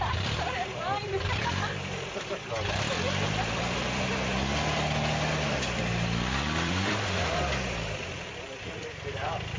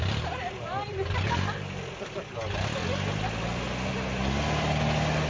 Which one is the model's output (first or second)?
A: first